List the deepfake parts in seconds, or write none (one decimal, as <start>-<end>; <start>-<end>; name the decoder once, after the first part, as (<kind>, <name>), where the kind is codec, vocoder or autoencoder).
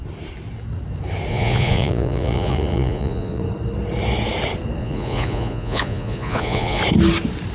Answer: 1.3-3.4 (vocoder, Vocos); 4.8-6.8